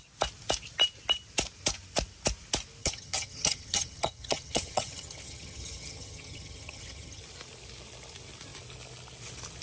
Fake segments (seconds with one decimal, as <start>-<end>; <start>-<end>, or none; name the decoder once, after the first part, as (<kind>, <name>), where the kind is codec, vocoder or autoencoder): 2.8-7.2 (vocoder, HiFi-GAN)